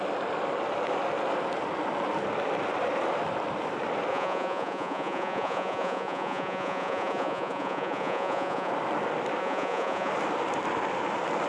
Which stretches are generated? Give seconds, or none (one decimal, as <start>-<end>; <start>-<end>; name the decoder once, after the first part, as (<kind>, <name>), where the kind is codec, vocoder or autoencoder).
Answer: 4.1-8.7 (vocoder, Vocos); 9.4-10.1

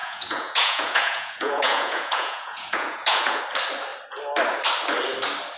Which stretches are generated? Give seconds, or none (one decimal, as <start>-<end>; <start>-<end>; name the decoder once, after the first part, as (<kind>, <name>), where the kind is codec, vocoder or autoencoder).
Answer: 0.0-3.4 (vocoder, Vocos)